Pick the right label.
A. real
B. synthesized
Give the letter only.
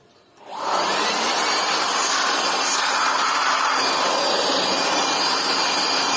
B